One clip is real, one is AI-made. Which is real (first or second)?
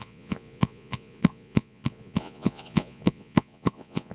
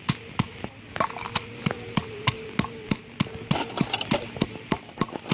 second